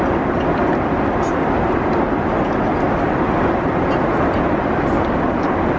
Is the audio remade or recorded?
recorded